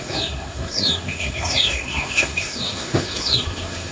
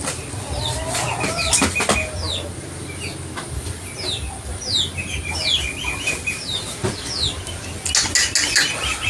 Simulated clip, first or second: first